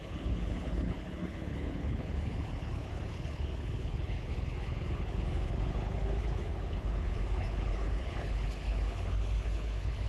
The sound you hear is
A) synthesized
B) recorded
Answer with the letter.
A